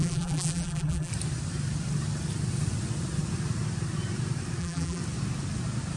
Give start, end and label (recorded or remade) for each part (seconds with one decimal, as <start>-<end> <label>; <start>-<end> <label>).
0.0-1.1 remade; 1.1-4.6 recorded; 4.6-5.0 remade; 5.0-6.0 recorded